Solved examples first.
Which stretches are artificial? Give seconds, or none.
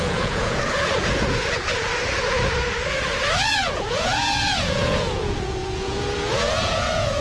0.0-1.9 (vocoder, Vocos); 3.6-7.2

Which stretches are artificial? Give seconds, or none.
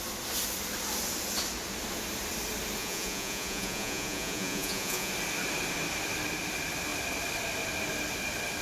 2.8-5.1 (vocoder, Vocos)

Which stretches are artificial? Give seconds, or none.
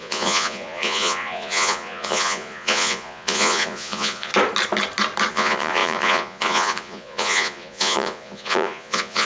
0.0-4.3 (vocoder, Vocos); 5.3-9.3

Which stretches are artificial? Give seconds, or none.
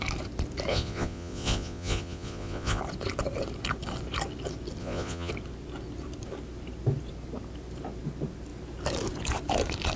0.7-2.8 (vocoder, Vocos); 4.8-5.3